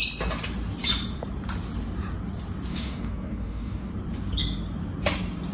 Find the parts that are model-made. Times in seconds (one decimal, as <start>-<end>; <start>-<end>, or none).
2.7-3.9

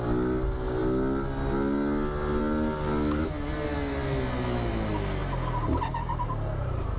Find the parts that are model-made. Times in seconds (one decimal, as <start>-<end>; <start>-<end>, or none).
none

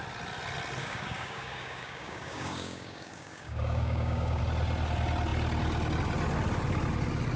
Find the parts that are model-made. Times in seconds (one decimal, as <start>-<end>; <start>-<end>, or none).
0.8-4.4

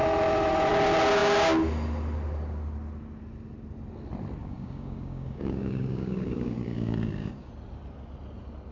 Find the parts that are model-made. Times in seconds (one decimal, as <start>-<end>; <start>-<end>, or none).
4.4-7.5

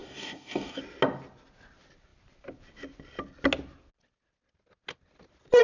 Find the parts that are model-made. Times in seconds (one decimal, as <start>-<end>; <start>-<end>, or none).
0.0-0.8

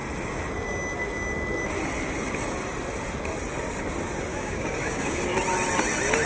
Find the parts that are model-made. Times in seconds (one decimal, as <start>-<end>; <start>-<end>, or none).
4.3-5.2